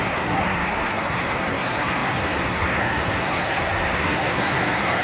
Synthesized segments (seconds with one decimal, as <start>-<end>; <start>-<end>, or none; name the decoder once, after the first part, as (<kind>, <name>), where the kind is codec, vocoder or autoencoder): 0.0-5.0 (codec, SNAC)